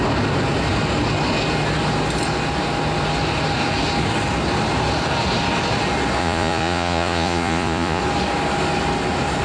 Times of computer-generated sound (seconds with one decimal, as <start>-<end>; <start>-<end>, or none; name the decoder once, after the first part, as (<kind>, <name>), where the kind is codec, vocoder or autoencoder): 6.2-8.0 (vocoder, Vocos)